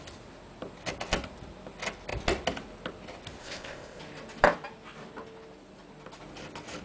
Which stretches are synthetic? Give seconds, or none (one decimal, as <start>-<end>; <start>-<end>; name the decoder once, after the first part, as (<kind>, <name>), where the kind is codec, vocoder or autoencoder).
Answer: 3.4-4.0 (codec, ZipCodec)